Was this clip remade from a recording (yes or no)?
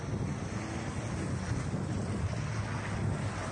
no